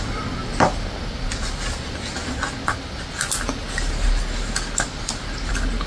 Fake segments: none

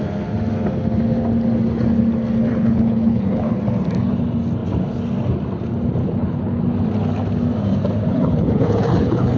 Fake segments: 2.5-3.6 (codec, HILCodec); 6.0-6.6; 8.1-9.4

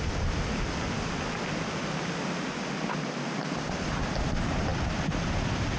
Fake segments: none

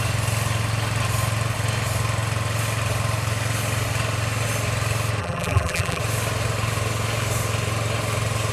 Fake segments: 5.2-6.0 (vocoder, BigVGAN v2)